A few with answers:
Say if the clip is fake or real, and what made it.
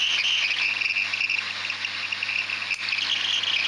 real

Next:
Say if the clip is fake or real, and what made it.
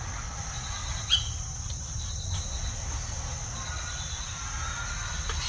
real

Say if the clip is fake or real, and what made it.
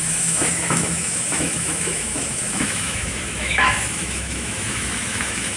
fake, autoencoder, DAC-VAE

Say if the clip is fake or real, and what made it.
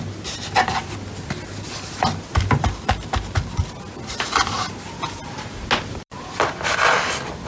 real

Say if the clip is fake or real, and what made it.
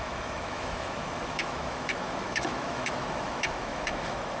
fake, autoencoder, DAC-VAE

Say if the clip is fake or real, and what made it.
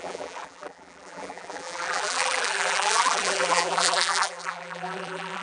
fake, vocoder, BigVGAN v2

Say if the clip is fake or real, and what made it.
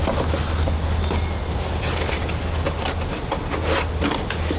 real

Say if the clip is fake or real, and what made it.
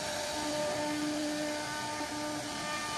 real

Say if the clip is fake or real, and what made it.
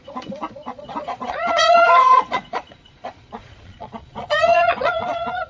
fake, vocoder, Vocos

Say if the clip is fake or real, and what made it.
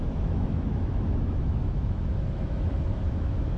fake, autoencoder, DAC-VAE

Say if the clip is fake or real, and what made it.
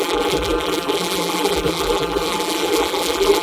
fake, vocoder, BigVGAN v2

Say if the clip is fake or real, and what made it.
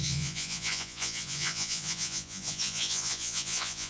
fake, vocoder, Vocos